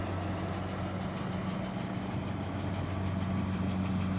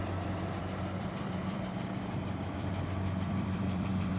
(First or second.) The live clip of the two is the first